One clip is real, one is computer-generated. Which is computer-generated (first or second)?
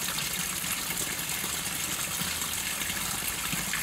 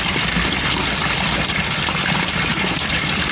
second